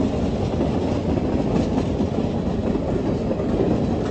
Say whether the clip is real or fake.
real